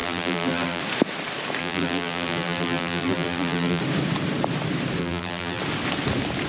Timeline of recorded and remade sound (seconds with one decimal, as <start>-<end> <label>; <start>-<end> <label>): 0.0-0.8 remade; 0.8-1.6 recorded; 1.6-3.8 remade; 3.8-5.0 recorded; 5.0-5.6 remade; 5.6-6.5 recorded